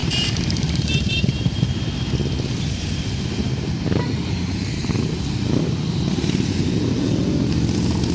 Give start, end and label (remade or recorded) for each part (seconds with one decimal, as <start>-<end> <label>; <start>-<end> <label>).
0.0-1.6 remade; 1.6-3.4 recorded; 3.4-4.8 remade; 4.8-8.1 recorded